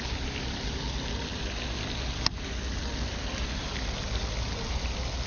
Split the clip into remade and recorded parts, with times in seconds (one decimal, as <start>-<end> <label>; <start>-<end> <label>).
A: 0.0-5.3 recorded